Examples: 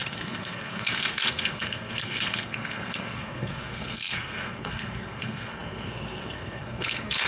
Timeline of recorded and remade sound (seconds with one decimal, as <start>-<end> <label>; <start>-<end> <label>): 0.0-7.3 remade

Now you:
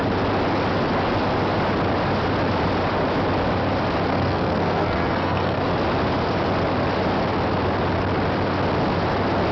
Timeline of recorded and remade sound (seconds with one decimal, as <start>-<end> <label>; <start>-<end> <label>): 0.0-4.1 recorded; 4.1-5.6 remade; 5.6-9.5 recorded

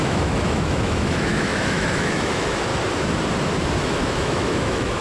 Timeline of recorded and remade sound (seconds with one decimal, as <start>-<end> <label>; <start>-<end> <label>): 0.0-2.7 remade; 2.7-3.8 recorded; 3.8-5.0 remade

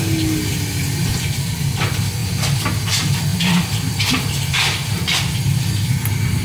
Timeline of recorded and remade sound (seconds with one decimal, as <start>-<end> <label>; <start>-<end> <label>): 0.0-6.4 recorded

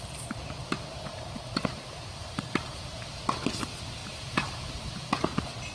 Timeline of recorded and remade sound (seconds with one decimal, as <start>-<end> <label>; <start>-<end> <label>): 0.0-1.1 recorded; 1.1-3.1 remade; 3.1-4.0 recorded; 4.0-5.0 remade; 5.0-5.7 recorded

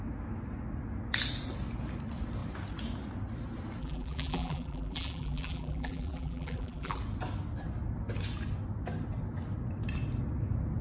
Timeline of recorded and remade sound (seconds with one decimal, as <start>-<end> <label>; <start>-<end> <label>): 0.0-3.8 recorded; 3.8-7.0 remade; 7.0-10.8 recorded

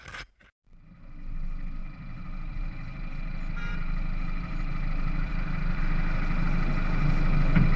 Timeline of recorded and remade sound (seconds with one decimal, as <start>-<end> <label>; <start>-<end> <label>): 0.0-1.8 recorded; 1.8-5.8 remade; 5.8-7.8 recorded